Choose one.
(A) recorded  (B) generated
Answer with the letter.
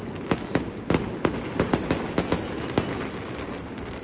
A